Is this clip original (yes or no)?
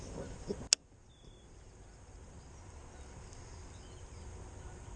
yes